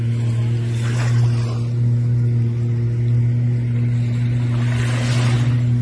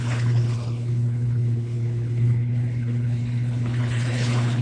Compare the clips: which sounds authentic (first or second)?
first